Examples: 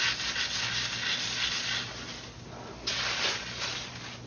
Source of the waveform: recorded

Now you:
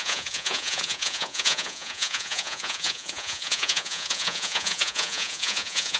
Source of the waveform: remade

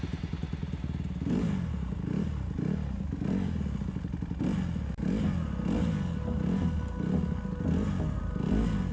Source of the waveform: recorded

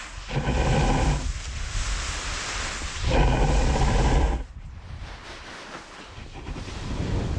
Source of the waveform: recorded